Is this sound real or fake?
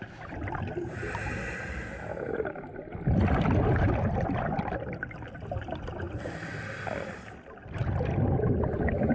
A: real